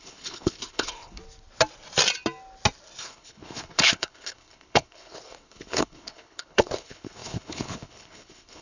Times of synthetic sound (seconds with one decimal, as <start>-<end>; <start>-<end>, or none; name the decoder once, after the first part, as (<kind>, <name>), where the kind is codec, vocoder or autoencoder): 0.0-1.2 (codec, HILCodec); 3.0-8.6